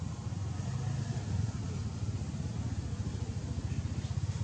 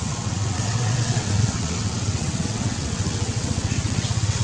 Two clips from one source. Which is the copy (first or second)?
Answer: second